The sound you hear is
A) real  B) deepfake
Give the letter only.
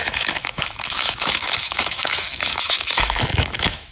B